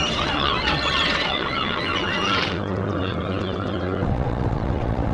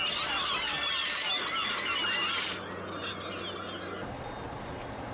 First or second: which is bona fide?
second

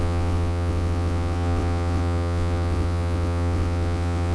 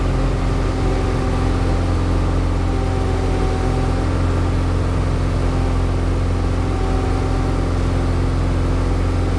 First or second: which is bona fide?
second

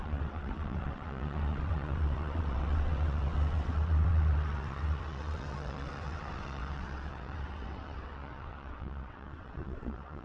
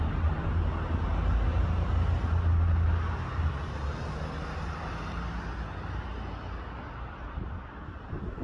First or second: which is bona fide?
second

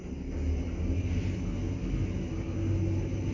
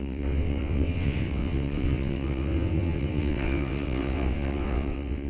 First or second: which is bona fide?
first